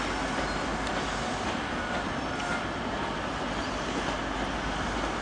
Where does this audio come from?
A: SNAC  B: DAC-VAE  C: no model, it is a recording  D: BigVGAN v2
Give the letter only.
C